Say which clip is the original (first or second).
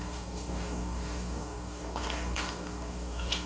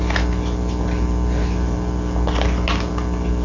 second